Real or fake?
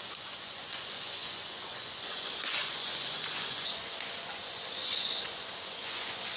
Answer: fake